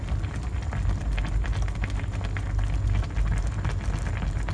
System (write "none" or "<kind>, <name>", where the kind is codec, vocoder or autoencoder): none